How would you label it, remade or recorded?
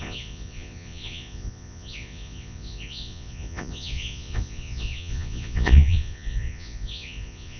remade